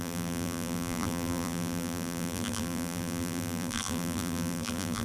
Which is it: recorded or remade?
remade